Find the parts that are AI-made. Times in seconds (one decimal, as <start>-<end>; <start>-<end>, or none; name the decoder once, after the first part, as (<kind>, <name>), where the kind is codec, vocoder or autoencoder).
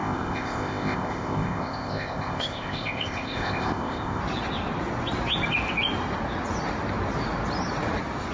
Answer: 0.0-4.2 (codec, ZipCodec)